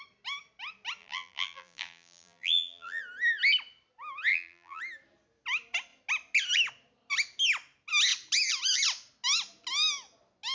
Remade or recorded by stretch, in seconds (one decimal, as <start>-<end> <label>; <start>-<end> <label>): 0.0-1.0 recorded; 1.0-3.0 remade; 3.0-4.3 recorded; 4.3-4.8 remade; 4.8-10.5 recorded